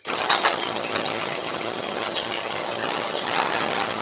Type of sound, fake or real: fake